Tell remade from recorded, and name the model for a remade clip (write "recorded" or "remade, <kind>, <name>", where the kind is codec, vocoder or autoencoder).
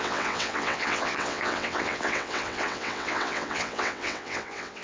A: remade, vocoder, WaveNeXt